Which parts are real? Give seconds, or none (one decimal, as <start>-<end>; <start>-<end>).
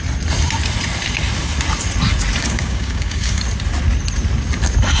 0.0-2.4; 3.4-5.0